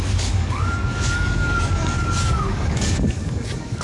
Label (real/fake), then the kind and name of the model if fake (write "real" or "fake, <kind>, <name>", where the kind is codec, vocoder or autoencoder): fake, codec, DAC